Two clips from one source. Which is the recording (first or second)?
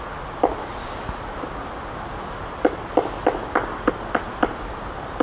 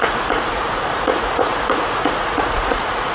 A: first